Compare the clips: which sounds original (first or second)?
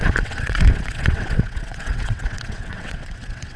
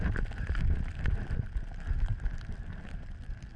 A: second